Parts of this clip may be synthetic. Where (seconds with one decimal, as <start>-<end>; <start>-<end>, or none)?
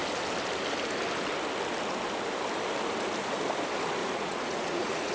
4.0-5.1